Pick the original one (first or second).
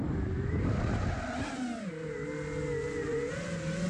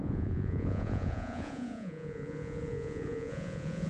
first